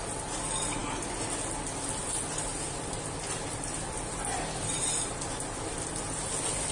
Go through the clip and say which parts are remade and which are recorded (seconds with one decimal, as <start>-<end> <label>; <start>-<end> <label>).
0.0-2.5 recorded; 2.5-3.0 remade; 3.0-6.7 recorded